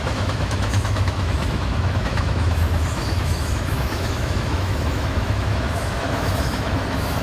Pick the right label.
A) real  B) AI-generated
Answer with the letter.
B